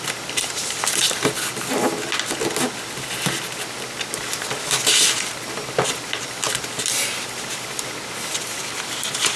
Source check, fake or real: real